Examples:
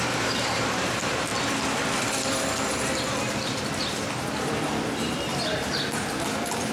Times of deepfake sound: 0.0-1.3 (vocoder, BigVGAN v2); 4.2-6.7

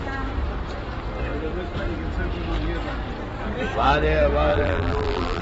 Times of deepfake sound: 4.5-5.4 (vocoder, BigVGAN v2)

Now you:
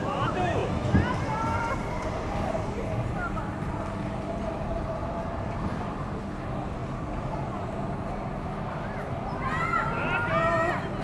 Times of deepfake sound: 0.6-3.4 (vocoder, BigVGAN v2); 5.0-6.2; 6.8-7.7

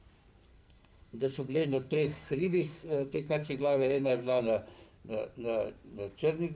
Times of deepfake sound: 0.5-4.4 (codec, SNAC)